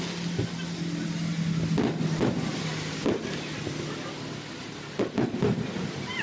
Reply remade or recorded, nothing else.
recorded